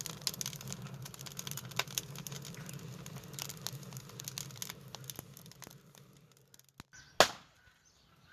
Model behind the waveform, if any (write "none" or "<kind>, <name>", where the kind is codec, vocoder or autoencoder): none